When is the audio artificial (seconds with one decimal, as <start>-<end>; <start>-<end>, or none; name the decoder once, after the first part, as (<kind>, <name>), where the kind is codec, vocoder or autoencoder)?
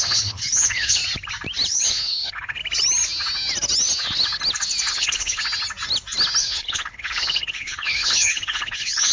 0.0-1.0 (codec, HILCodec); 1.7-2.6; 4.9-5.4; 6.4-9.1